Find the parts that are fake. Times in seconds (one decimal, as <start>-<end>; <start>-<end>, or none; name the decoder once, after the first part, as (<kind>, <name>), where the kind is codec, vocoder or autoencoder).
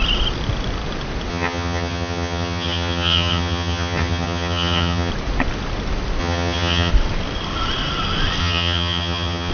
1.3-5.1 (vocoder, HiFi-GAN); 6.2-6.9; 8.4-9.5